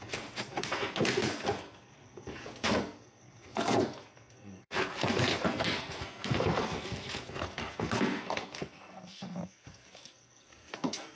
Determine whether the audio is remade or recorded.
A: remade